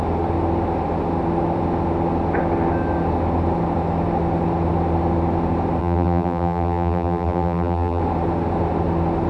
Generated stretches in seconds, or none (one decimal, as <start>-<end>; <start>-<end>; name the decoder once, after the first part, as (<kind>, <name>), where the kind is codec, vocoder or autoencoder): 5.8-8.0 (vocoder, BigVGAN v2)